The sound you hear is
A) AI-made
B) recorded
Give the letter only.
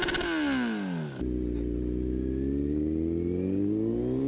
B